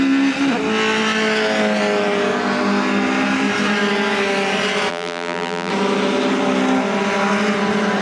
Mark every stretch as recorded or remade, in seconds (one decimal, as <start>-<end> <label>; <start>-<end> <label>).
0.0-4.9 recorded; 4.9-5.7 remade; 5.7-8.0 recorded